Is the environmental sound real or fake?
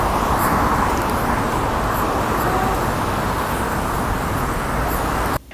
real